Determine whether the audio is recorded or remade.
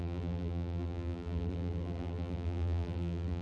remade